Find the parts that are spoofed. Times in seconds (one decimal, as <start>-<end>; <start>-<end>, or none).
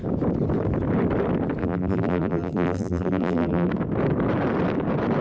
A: 1.6-3.7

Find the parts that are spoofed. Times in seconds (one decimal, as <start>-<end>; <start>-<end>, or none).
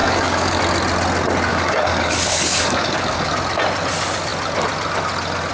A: 0.0-0.6; 1.5-3.3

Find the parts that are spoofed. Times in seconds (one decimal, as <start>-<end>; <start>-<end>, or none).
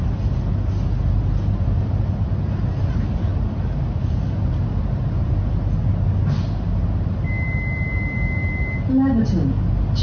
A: none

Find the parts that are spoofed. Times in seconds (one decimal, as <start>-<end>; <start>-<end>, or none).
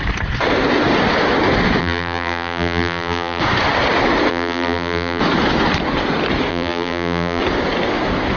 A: 1.8-3.4; 4.3-5.2; 6.5-7.4